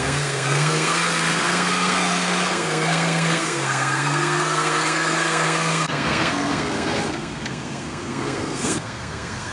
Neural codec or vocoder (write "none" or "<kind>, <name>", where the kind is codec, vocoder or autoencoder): codec, SNAC